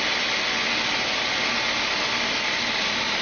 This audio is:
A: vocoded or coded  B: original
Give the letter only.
B